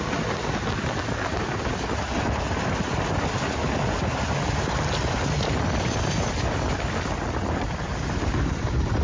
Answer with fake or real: real